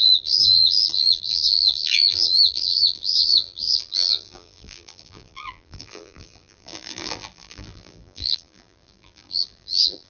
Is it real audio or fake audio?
fake